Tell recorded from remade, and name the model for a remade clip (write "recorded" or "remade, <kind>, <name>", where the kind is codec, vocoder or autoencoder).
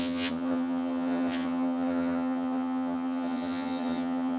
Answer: remade, vocoder, HiFi-GAN